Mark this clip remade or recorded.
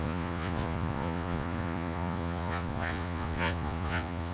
remade